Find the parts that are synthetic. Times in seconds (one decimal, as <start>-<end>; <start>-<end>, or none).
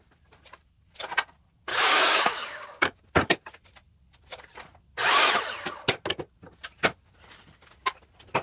1.7-3.0